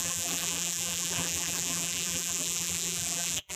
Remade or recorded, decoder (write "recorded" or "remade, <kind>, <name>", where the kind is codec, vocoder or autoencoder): remade, vocoder, BigVGAN v2